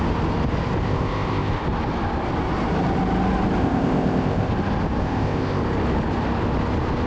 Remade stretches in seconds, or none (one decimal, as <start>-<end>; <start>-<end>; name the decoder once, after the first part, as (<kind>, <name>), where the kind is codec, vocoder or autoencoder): 0.8-1.5 (codec, ZipCodec); 3.6-4.5; 5.0-5.6